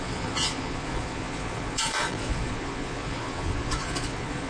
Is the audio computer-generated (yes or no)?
yes